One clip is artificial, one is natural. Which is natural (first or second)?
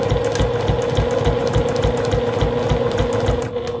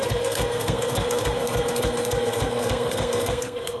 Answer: first